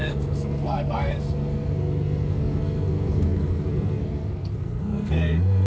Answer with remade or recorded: remade